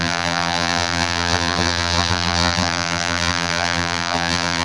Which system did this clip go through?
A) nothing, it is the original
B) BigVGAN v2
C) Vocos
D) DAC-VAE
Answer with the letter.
B